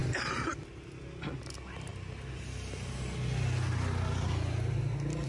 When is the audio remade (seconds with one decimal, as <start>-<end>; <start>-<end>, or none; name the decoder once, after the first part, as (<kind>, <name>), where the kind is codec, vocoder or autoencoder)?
0.0-0.5 (vocoder, BigVGAN v2)